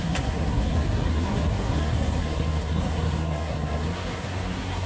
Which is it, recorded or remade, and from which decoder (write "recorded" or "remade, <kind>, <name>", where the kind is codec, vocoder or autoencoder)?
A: remade, codec, SNAC